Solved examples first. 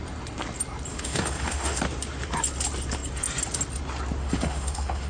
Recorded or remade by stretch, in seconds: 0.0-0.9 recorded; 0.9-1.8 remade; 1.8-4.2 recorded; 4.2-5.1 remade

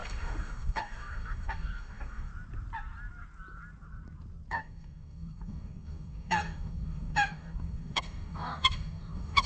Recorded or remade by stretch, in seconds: 0.0-2.3 remade; 2.3-4.5 recorded; 4.5-9.5 remade

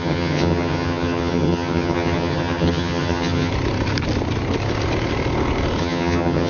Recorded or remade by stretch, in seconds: 0.0-3.5 remade; 3.5-5.8 recorded; 5.8-6.5 remade